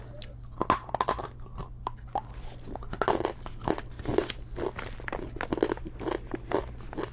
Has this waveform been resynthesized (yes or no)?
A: no